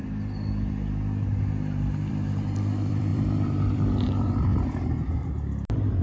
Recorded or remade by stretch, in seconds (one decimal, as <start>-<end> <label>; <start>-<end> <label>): 0.0-2.1 recorded; 2.1-4.5 remade; 4.5-6.0 recorded